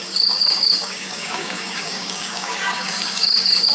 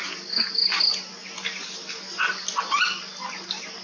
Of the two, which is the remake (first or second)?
first